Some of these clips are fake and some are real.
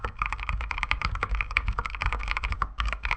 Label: fake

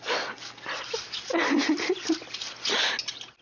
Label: real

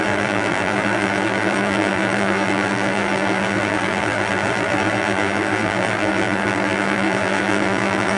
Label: fake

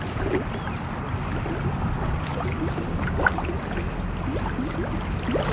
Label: real